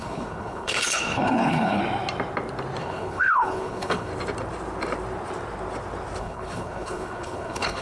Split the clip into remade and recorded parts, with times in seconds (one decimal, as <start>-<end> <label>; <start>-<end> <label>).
0.0-1.8 remade; 1.8-2.8 recorded; 2.8-4.1 remade; 4.1-6.2 recorded; 6.2-7.8 remade